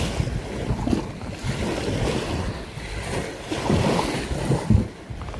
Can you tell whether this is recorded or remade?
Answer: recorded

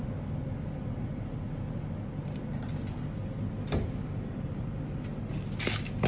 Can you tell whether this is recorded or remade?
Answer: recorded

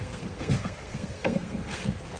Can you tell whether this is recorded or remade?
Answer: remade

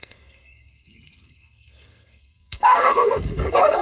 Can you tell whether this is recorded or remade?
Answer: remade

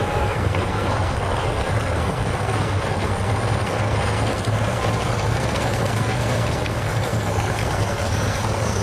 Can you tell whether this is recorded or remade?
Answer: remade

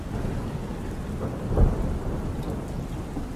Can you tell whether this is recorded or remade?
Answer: recorded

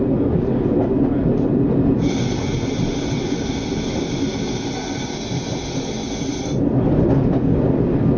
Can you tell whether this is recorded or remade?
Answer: recorded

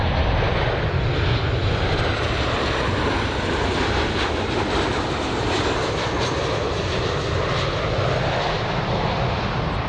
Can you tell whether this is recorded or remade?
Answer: recorded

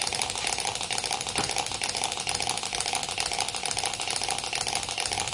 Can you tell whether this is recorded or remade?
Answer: recorded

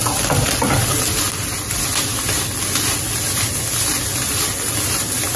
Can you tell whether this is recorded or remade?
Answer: recorded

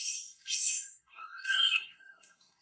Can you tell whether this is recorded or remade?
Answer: remade